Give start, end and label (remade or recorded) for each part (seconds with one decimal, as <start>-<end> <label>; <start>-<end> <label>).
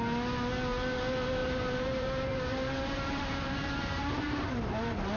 0.0-1.4 recorded; 1.4-4.5 remade; 4.5-5.2 recorded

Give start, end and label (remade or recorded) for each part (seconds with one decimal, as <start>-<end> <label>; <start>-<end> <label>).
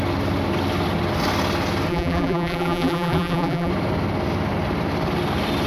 0.0-1.9 recorded; 1.9-3.7 remade; 3.7-5.7 recorded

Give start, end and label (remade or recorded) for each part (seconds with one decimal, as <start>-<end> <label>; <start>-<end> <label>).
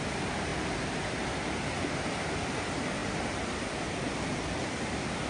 0.0-5.3 recorded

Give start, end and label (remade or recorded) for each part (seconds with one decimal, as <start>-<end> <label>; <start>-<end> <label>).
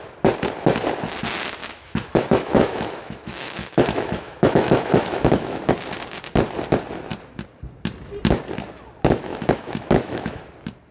0.0-1.6 recorded; 1.6-5.6 remade; 5.6-9.3 recorded; 9.3-10.4 remade; 10.4-10.9 recorded